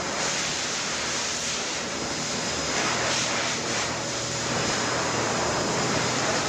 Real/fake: fake